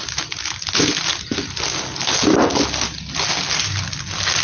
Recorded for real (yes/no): yes